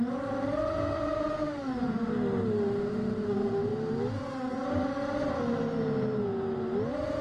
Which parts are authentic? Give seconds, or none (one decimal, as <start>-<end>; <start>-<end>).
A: 0.0-7.2